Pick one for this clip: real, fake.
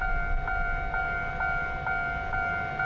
real